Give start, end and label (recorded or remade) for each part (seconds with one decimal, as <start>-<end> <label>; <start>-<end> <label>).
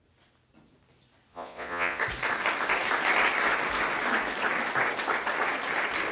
0.0-1.3 recorded; 1.3-2.0 remade; 2.0-6.1 recorded